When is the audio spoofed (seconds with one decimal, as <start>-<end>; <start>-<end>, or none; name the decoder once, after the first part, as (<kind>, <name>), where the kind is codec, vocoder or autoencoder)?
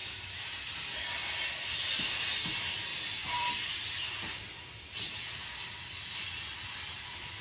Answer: 0.0-0.6 (vocoder, BigVGAN v2); 2.9-3.5